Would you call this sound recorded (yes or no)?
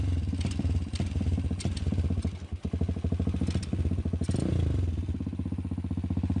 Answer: yes